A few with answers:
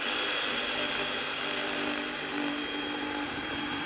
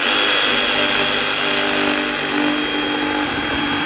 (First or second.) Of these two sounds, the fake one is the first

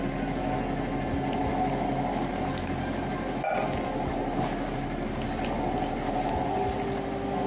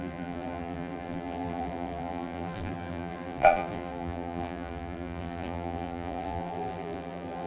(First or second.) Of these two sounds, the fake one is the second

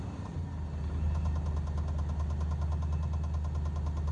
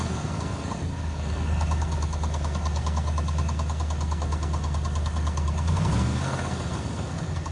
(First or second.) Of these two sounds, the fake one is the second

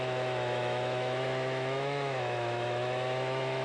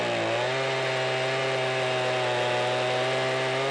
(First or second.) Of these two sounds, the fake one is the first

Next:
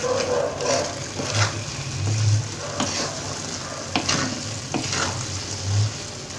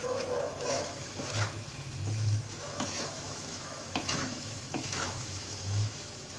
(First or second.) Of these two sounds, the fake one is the second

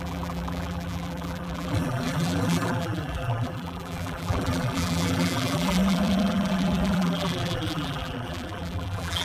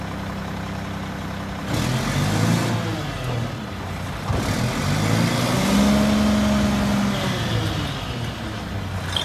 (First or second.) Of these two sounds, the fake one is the first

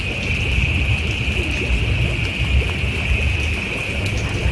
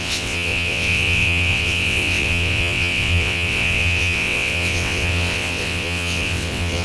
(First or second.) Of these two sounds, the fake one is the second